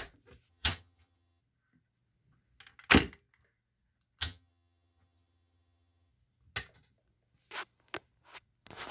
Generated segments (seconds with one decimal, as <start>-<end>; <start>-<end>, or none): 0.5-1.4; 4.2-6.1